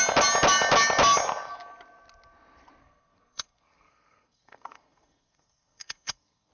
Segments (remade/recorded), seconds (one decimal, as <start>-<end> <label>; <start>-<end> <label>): 0.0-2.8 recorded; 2.8-6.5 remade